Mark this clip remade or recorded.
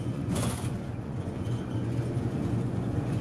remade